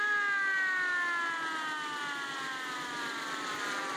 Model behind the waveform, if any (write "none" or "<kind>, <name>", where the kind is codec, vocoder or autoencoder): none